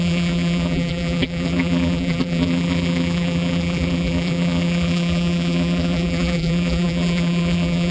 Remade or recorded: remade